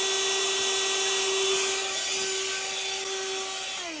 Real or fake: real